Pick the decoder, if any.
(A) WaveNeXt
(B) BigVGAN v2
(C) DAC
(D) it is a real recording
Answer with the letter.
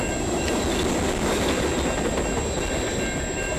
D